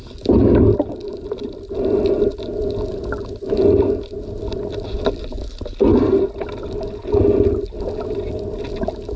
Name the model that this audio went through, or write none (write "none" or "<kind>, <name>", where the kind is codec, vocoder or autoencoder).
none